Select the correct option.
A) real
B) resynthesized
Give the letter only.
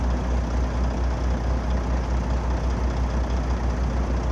A